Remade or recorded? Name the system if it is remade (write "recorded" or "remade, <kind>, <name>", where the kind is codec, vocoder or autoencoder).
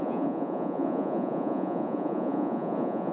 remade, vocoder, Vocos